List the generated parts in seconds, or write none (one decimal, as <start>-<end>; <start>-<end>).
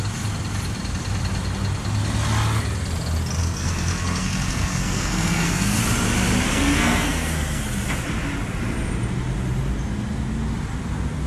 3.4-5.8; 6.5-7.6